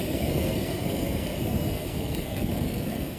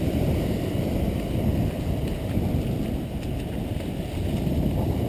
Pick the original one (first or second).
second